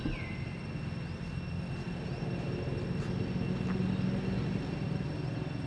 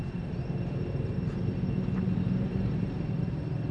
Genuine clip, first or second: first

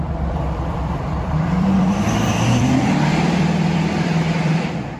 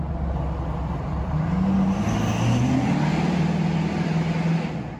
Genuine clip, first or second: second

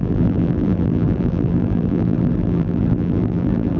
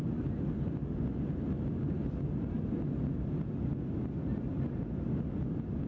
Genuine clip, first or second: second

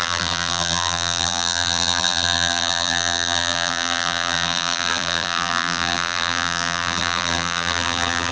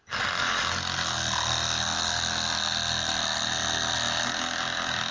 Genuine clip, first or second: second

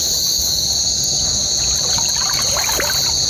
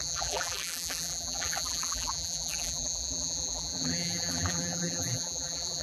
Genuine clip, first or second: first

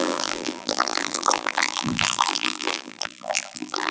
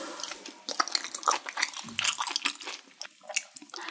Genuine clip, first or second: second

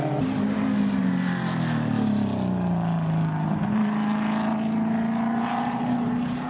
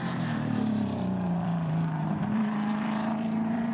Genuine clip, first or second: first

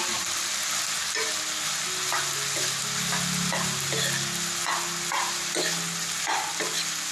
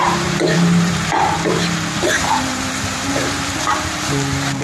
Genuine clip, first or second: first